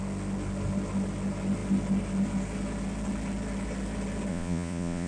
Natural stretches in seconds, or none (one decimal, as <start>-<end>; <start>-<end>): 0.0-4.3